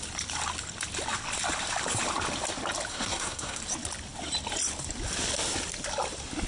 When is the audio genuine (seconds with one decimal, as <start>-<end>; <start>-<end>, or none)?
0.0-2.9; 3.6-6.5

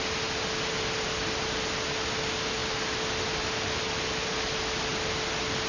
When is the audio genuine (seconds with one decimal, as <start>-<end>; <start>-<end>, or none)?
0.0-5.7

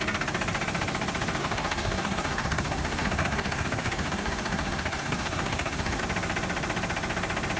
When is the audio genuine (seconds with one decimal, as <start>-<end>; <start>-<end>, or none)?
0.0-1.4; 6.0-7.6

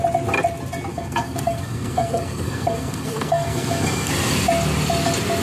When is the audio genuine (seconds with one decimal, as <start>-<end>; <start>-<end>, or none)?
0.0-0.9; 4.1-5.4

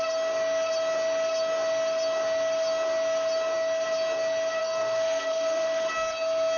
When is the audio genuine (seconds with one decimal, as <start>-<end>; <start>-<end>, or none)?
0.0-4.6; 5.9-6.6

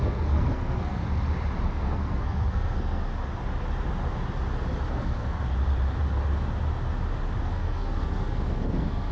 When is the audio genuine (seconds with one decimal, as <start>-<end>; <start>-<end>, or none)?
1.0-1.7; 3.0-4.9; 5.4-7.4

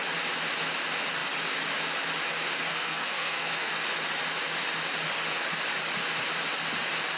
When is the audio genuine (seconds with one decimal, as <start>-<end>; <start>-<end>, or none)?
0.0-2.7; 3.7-7.2

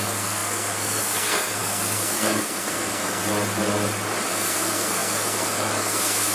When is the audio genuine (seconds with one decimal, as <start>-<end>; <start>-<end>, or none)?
3.2-4.3